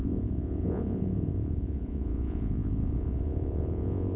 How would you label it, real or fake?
fake